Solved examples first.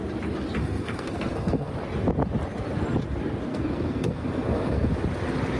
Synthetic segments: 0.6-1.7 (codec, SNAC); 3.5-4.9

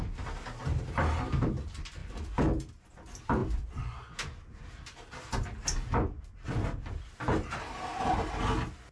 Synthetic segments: none

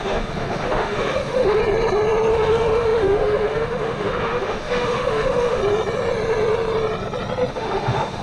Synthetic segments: 0.0-1.6 (autoencoder, DAC-VAE); 2.3-5.6; 7.5-8.2

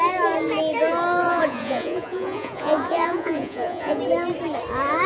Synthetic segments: 1.2-4.0 (vocoder, Vocos)

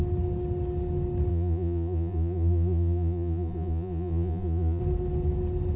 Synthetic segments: 1.3-4.8 (vocoder, Vocos)

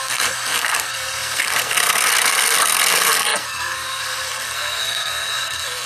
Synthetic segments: 0.0-5.9 (codec, SNAC)

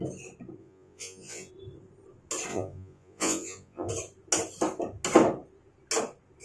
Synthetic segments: 0.6-1.5 (vocoder, Vocos); 2.5-3.9